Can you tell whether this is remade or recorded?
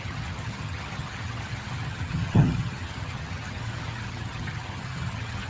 remade